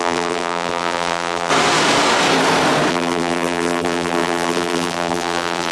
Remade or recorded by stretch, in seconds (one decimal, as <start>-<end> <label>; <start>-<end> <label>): 0.0-1.5 remade; 1.5-2.9 recorded; 2.9-5.7 remade